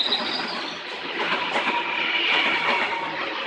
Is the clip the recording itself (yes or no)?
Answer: yes